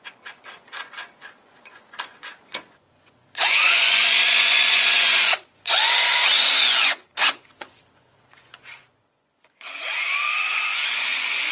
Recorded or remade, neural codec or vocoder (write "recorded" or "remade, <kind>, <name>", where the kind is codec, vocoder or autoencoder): remade, vocoder, Vocos